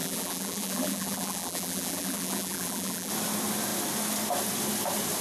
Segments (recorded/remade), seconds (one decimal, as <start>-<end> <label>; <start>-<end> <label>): 0.0-3.1 remade; 3.1-5.2 recorded